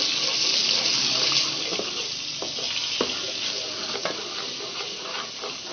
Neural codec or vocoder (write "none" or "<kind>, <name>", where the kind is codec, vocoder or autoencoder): none